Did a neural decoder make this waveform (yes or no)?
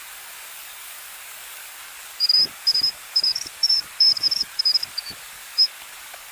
yes